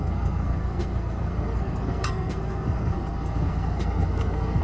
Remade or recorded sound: remade